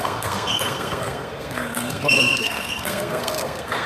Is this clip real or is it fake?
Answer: fake